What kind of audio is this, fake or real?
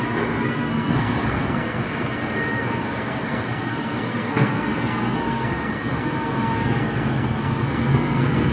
fake